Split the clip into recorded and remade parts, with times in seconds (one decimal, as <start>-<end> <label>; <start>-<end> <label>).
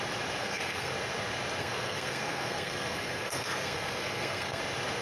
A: 0.0-0.4 recorded; 0.4-0.9 remade; 0.9-1.6 recorded; 1.6-4.6 remade; 4.6-5.0 recorded